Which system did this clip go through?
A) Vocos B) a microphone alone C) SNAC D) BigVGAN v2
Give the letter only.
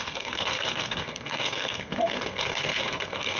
C